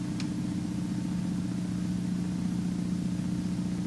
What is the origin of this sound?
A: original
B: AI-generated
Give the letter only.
A